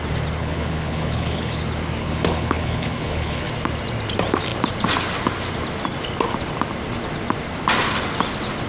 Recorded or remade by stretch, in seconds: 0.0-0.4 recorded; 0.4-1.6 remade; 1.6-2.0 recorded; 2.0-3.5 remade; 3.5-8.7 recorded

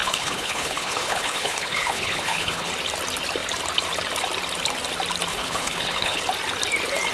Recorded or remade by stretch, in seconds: 0.0-2.7 remade; 2.7-5.3 recorded; 5.3-6.2 remade; 6.2-7.1 recorded

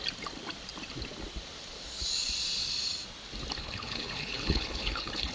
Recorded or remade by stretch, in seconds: 0.0-3.6 recorded; 3.6-5.3 remade